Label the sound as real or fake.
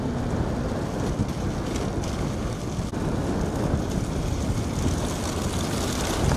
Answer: real